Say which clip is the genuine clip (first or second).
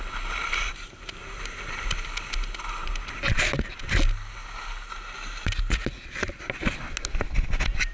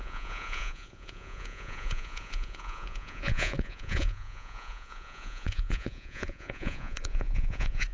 first